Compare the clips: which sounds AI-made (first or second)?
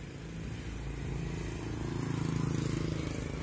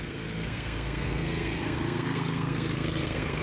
second